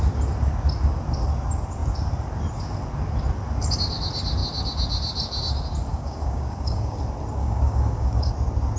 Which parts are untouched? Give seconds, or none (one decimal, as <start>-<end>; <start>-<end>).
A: 0.0-5.9; 7.0-7.4; 8.3-8.8